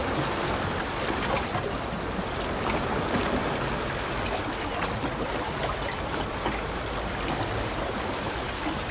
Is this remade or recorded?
recorded